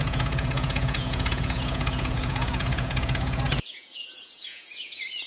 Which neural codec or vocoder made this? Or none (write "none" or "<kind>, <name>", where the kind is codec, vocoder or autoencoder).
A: vocoder, Vocos